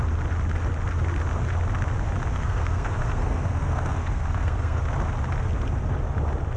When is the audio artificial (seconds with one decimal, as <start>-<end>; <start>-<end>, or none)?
2.3-4.8

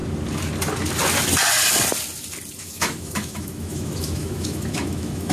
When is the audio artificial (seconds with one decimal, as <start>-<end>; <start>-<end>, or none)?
2.6-5.3

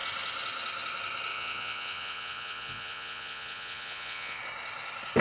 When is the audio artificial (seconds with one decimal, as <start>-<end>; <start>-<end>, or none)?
1.3-4.4

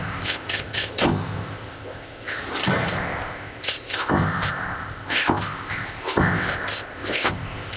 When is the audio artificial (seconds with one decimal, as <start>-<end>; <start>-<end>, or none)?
0.0-2.4; 2.9-7.8

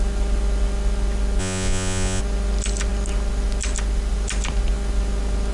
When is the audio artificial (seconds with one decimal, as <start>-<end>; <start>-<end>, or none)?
1.4-2.2

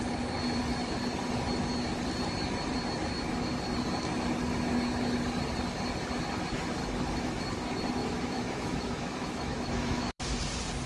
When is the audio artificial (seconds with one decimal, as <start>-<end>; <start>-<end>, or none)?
6.8-7.4; 8.0-10.2

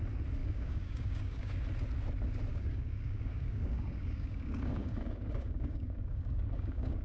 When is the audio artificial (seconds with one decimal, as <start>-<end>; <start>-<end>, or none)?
0.4-1.5; 2.5-7.0